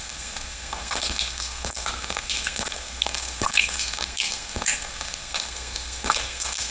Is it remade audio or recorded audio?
remade